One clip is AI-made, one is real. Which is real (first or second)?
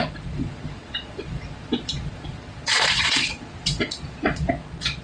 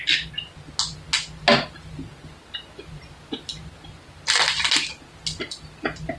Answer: second